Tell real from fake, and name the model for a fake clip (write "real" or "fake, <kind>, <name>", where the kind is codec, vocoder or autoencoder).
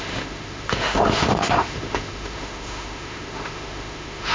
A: fake, autoencoder, DAC-VAE